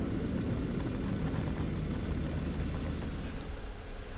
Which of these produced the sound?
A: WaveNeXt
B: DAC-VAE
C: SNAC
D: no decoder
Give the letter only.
D